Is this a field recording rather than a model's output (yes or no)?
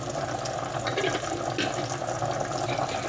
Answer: yes